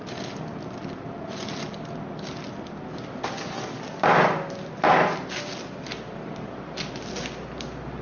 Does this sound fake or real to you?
real